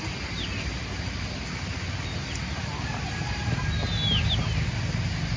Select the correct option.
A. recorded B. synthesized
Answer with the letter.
A